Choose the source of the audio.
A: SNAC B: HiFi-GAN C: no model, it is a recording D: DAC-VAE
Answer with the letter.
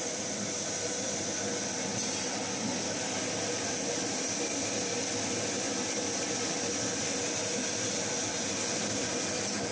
C